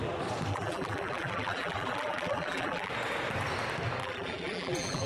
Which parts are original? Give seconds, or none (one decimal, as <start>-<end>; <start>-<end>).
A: 0.0-0.5; 2.9-4.0